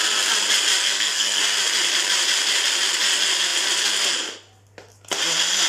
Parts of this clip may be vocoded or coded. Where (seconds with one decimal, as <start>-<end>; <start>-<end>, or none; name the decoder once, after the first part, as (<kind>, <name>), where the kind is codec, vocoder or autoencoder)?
0.8-1.4 (codec, SNAC)